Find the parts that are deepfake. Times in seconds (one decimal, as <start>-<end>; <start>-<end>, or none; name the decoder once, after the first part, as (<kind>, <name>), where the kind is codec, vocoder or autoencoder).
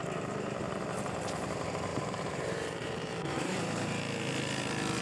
0.0-0.6 (vocoder, BigVGAN v2); 1.9-4.0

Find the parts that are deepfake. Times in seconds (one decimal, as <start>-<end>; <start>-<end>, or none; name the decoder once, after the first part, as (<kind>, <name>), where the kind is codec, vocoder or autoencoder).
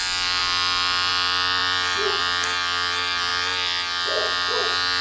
none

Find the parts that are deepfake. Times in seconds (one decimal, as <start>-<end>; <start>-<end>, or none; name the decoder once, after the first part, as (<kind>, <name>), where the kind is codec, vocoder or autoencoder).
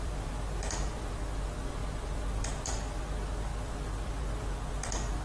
0.0-5.2 (vocoder, BigVGAN v2)